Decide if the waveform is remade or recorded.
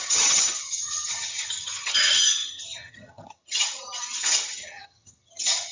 remade